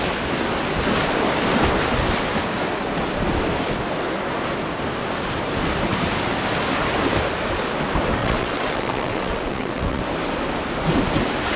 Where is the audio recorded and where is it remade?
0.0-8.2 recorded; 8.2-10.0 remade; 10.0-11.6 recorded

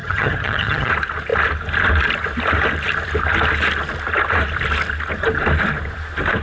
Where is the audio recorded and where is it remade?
0.0-0.9 remade; 0.9-6.4 recorded

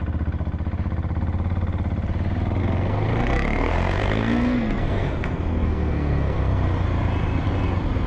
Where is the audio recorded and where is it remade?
0.0-2.6 recorded; 2.6-6.6 remade; 6.6-8.1 recorded